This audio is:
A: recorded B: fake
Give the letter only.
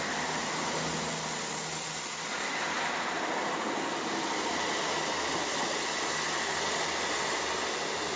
A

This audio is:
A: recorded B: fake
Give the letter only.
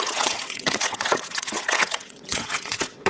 B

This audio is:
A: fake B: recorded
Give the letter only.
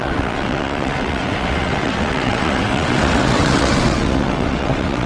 A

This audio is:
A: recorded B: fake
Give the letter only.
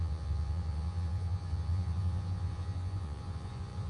B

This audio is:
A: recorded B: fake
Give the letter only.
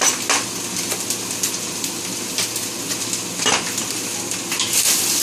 A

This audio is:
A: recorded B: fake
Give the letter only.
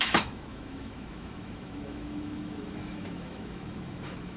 B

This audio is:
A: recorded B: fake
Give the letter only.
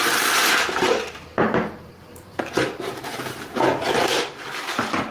B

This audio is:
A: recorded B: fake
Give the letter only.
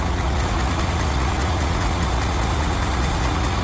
B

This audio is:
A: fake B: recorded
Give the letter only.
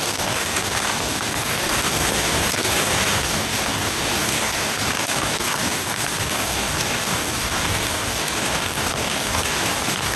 A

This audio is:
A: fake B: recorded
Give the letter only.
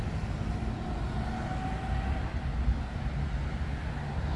B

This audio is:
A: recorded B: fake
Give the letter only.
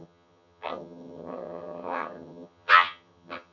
B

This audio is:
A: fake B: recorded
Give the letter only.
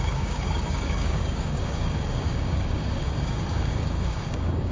A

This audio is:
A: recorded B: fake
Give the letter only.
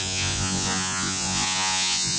B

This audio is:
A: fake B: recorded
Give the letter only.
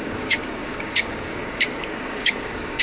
A